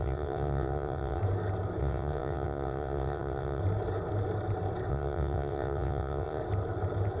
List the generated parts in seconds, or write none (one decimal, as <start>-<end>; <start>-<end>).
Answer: 0.0-1.2; 1.8-3.6; 4.9-6.4